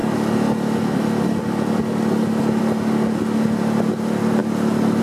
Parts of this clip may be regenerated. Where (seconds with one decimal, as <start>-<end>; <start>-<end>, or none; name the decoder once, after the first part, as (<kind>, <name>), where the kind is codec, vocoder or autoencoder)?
none